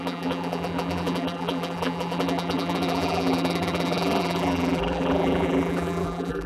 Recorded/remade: remade